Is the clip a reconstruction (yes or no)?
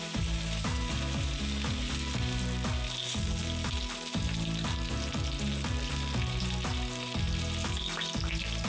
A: no